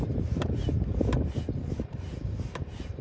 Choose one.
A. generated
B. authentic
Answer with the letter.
A